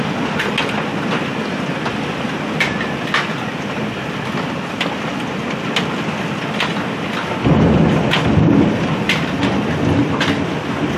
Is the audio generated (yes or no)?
no